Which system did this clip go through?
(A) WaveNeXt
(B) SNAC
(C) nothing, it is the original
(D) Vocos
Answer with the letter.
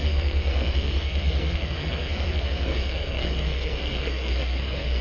B